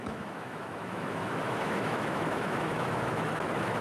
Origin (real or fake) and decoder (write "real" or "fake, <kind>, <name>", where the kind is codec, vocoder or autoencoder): fake, autoencoder, DAC-VAE